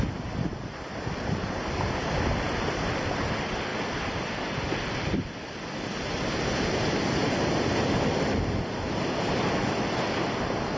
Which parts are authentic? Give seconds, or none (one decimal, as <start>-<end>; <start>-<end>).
0.0-10.8